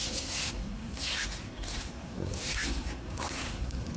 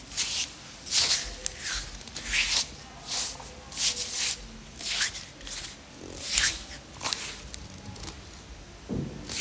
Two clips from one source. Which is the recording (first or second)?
second